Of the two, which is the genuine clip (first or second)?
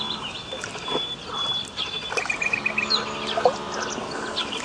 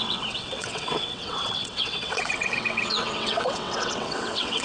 first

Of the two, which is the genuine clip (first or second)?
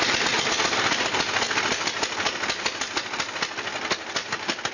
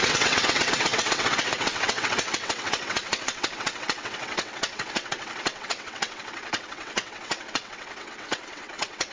first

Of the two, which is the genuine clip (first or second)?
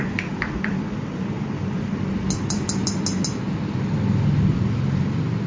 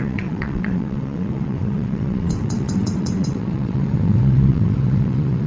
first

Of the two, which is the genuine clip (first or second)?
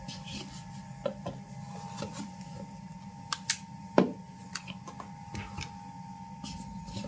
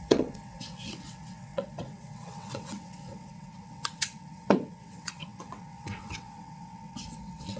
first